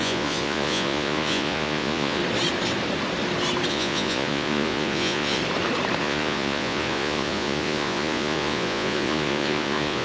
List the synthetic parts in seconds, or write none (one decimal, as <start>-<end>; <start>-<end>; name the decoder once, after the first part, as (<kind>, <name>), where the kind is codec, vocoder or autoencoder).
0.0-2.2 (vocoder, Vocos); 3.7-5.4; 6.0-10.0